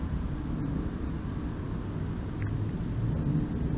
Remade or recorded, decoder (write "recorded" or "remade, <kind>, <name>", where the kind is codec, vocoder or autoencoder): recorded